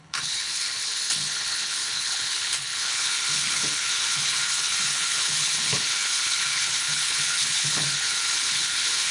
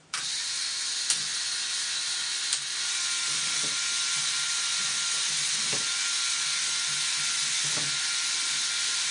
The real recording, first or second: second